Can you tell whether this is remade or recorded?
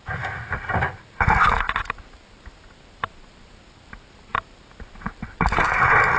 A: recorded